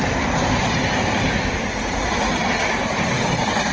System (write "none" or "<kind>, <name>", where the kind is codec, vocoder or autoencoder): none